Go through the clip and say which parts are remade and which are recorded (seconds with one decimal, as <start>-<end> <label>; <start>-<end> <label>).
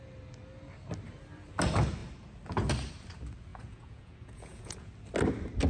0.0-3.5 recorded; 3.5-4.9 remade; 4.9-5.7 recorded